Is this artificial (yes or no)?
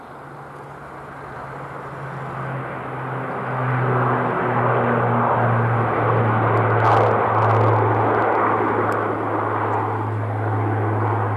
no